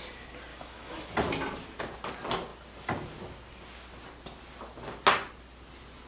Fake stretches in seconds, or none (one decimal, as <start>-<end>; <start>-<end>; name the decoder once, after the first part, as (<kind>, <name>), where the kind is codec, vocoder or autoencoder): 0.5-1.1 (autoencoder, DAC-VAE)